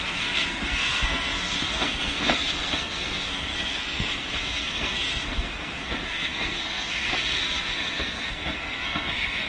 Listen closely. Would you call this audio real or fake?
fake